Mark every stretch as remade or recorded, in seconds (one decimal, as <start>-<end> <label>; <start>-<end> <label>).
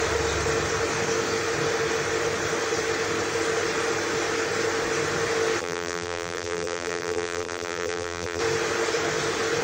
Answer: 0.0-5.6 recorded; 5.6-8.4 remade; 8.4-9.6 recorded